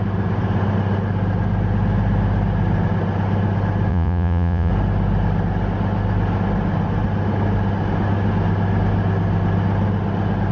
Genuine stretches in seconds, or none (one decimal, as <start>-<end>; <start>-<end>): 0.0-3.9; 4.7-10.5